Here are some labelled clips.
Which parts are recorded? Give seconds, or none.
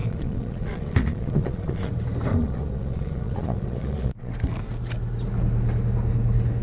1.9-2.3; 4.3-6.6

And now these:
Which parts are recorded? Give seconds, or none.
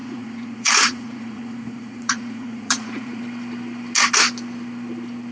3.2-5.3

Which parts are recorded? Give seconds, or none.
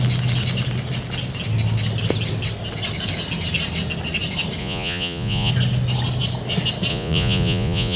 0.0-4.6; 5.5-6.9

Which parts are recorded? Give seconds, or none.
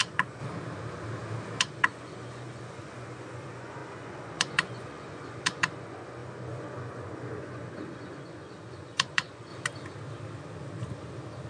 0.4-1.6; 9.5-11.5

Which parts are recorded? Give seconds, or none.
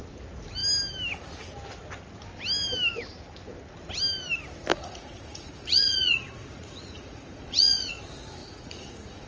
0.0-4.7; 7.9-8.4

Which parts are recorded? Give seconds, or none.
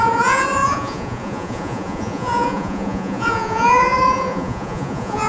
none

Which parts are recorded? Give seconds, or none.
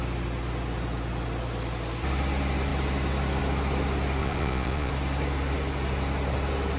0.0-4.2; 4.9-6.8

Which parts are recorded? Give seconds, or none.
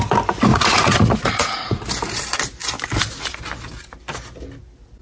0.0-0.5; 1.8-5.0